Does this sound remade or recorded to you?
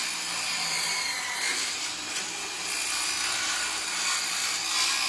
recorded